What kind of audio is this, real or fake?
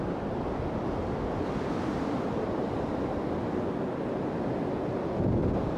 real